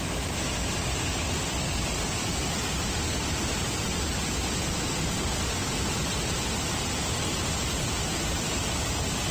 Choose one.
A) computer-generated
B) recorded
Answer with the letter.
B